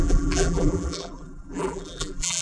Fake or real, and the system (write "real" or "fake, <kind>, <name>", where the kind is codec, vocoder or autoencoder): fake, vocoder, BigVGAN v2